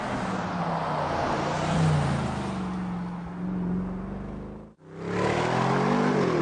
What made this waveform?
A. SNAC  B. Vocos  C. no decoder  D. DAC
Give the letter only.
C